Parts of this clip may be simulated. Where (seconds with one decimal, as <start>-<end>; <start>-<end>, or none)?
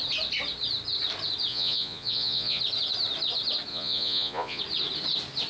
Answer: 1.5-2.6; 3.7-4.6